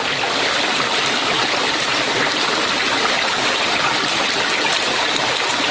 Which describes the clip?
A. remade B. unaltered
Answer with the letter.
B